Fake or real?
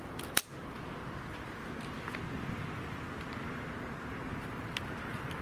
real